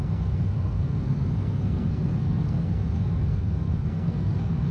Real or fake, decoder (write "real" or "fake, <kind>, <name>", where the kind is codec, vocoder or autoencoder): fake, codec, SNAC